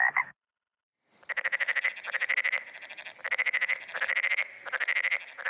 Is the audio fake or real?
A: real